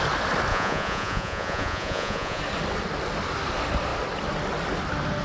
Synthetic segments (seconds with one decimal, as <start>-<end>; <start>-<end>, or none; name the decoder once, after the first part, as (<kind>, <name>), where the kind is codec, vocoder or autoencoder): 0.5-2.4 (vocoder, Vocos)

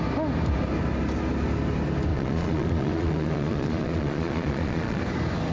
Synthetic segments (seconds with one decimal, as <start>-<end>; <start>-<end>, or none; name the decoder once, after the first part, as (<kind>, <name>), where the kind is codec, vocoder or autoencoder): 2.1-5.0 (vocoder, Vocos)

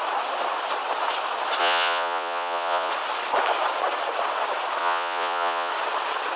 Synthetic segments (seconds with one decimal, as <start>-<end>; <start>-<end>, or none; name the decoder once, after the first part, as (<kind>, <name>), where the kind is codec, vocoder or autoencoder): 1.6-2.9 (vocoder, Vocos); 4.8-5.7

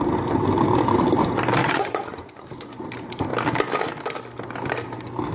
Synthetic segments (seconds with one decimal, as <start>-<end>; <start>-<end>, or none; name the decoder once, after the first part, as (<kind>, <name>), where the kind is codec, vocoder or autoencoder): 1.6-2.7 (vocoder, Vocos)